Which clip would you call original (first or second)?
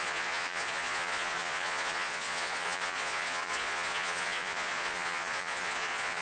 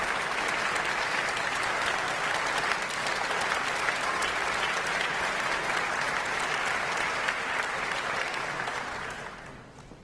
second